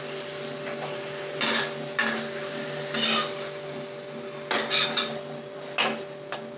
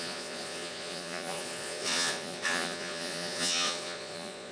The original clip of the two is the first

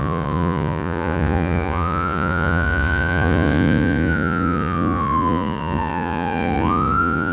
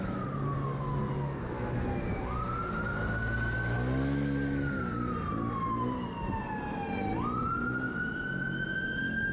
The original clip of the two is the second